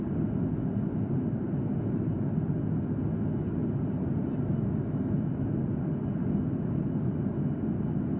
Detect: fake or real real